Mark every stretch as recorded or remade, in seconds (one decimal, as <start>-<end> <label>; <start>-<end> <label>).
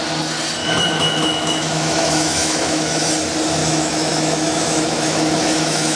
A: 0.0-0.6 recorded; 0.6-3.1 remade; 3.1-3.6 recorded; 3.6-6.0 remade